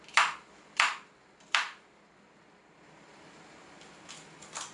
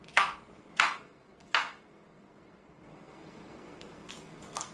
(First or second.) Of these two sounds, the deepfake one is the second